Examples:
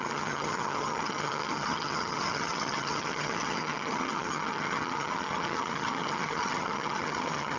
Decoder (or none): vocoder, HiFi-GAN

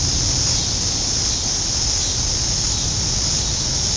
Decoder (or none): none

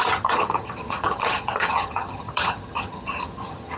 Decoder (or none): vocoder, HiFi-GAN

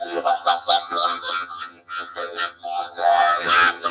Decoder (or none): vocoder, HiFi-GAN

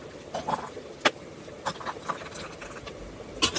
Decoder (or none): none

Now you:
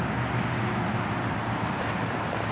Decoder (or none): none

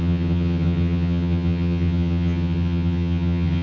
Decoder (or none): vocoder, HiFi-GAN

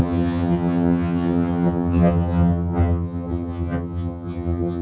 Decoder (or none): vocoder, HiFi-GAN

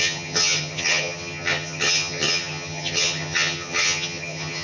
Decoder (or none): vocoder, HiFi-GAN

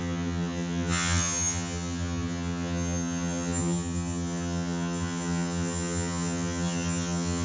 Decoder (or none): vocoder, HiFi-GAN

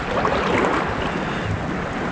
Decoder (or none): none